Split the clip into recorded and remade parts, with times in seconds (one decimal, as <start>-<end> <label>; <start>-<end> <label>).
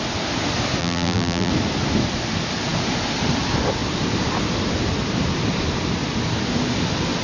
0.0-0.8 recorded; 0.8-1.5 remade; 1.5-7.2 recorded